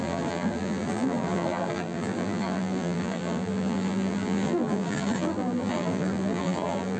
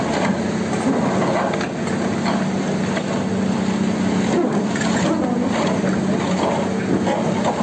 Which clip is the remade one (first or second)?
first